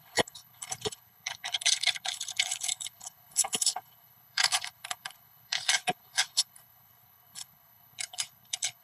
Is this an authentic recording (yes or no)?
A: no